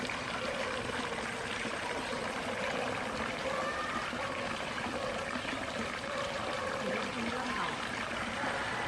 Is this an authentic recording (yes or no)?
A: yes